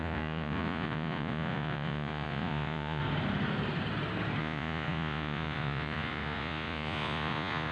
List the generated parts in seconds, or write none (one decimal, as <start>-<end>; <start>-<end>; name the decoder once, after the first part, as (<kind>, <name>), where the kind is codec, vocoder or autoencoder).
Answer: 0.0-3.0 (vocoder, Vocos); 4.4-7.7